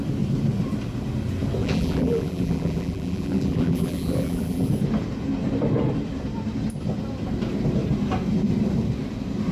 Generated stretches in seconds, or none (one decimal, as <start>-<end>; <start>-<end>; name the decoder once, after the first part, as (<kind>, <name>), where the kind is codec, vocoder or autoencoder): 1.6-4.7 (vocoder, BigVGAN v2)